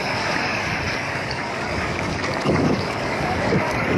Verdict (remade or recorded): remade